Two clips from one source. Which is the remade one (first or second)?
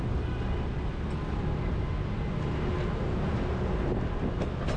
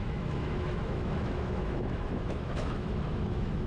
second